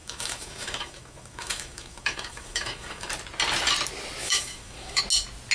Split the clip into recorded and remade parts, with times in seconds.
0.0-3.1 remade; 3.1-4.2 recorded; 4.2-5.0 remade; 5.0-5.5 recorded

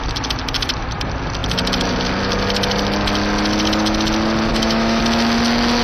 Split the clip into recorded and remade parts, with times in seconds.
0.0-4.5 recorded; 4.5-5.0 remade; 5.0-5.8 recorded

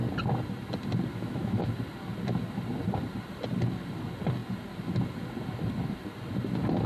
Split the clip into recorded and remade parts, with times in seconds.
0.0-1.1 recorded; 1.1-1.7 remade; 1.7-6.9 recorded

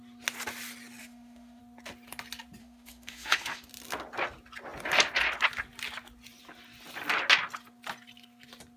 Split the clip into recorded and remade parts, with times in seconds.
0.0-1.0 recorded; 1.0-1.6 remade; 1.6-2.6 recorded; 2.6-3.7 remade; 3.7-8.8 recorded

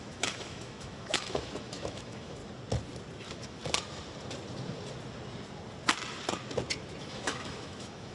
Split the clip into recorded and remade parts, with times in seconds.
0.0-2.4 remade; 2.4-3.2 recorded; 3.2-3.6 remade; 3.6-7.0 recorded; 7.0-8.1 remade